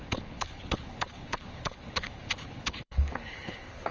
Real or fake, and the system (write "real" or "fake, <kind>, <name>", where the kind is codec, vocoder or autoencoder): fake, codec, HILCodec